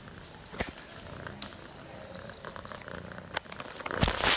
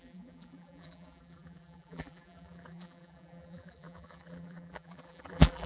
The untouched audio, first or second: first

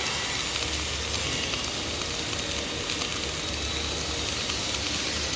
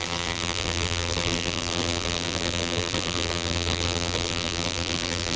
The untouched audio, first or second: first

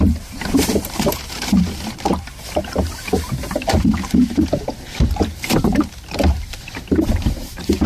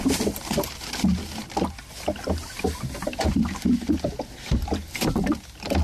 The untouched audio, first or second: second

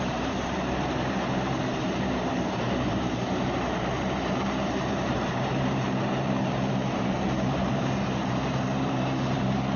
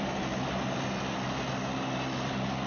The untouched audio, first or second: second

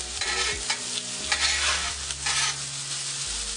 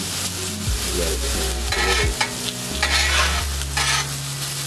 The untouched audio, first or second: second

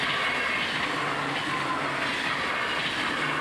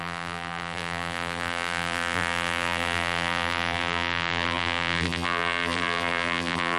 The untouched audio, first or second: first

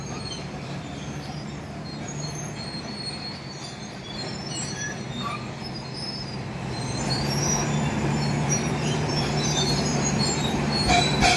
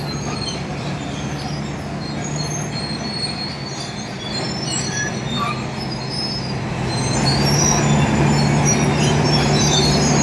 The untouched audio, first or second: second